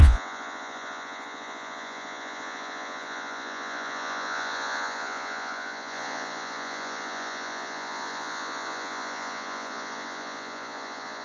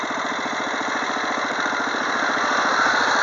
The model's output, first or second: first